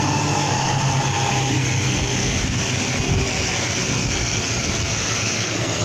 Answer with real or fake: fake